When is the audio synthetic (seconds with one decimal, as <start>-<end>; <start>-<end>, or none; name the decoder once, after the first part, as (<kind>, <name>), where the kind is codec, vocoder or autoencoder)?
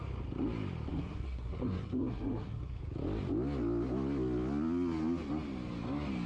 0.9-2.8 (codec, SNAC)